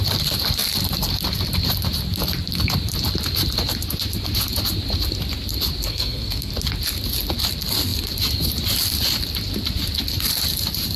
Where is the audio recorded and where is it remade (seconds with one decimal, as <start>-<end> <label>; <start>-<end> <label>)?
0.0-5.9 recorded; 5.9-6.5 remade; 6.5-11.0 recorded